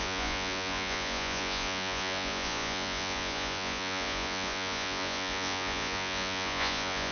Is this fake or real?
fake